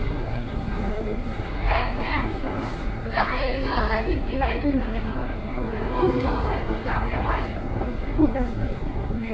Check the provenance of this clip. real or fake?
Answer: fake